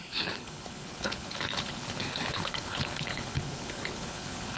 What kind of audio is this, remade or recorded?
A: remade